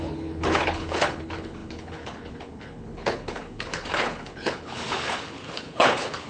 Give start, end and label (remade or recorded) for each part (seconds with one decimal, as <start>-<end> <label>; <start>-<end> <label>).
0.0-6.3 remade